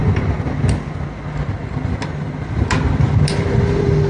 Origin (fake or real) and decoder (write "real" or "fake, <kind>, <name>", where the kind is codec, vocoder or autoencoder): real